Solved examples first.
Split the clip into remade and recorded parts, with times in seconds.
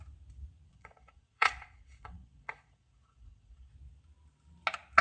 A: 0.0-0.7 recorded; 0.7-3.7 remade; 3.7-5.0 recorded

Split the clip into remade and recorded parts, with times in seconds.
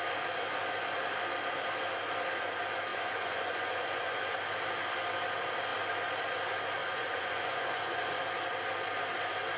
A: 0.0-2.9 recorded; 2.9-4.4 remade; 4.4-6.8 recorded; 6.8-8.2 remade; 8.2-9.6 recorded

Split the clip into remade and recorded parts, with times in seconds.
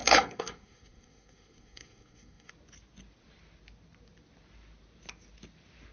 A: 0.0-2.5 remade; 2.5-5.9 recorded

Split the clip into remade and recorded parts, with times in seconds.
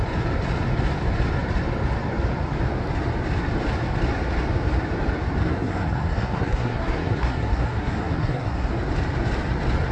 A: 0.0-5.4 recorded; 5.4-8.7 remade; 8.7-9.9 recorded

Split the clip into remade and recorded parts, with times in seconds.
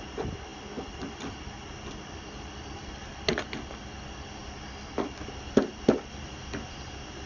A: 0.0-7.3 recorded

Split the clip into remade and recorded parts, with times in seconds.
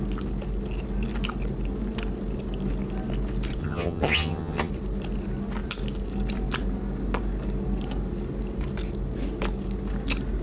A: 0.0-3.6 recorded; 3.6-4.7 remade; 4.7-10.4 recorded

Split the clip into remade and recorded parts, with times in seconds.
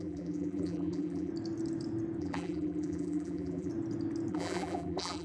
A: 0.0-1.3 remade; 1.3-2.2 recorded; 2.2-3.7 remade; 3.7-4.3 recorded; 4.3-5.2 remade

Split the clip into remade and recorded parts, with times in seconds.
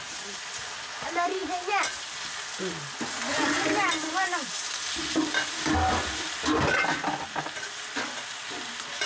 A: 0.0-9.1 recorded